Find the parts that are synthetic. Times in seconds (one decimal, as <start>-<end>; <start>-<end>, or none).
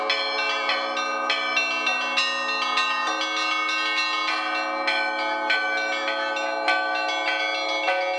none